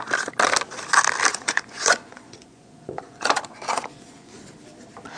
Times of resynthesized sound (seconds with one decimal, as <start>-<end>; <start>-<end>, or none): 1.3-4.4